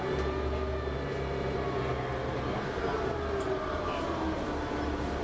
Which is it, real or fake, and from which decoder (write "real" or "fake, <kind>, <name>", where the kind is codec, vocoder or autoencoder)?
real